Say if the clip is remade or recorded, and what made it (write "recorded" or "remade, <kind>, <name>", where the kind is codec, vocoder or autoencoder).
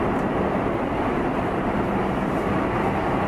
remade, vocoder, BigVGAN v2